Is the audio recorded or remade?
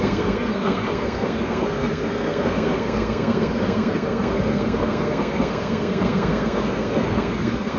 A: remade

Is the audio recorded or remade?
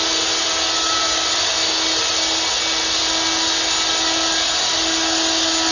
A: recorded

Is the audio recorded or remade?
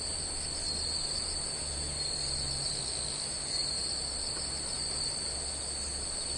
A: recorded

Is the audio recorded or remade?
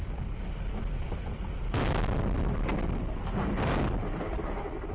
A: recorded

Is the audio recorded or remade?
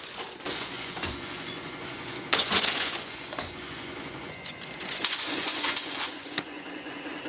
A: remade